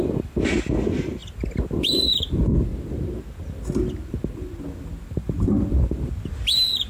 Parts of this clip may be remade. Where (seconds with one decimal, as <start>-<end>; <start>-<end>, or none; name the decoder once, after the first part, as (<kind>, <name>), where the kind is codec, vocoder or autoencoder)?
none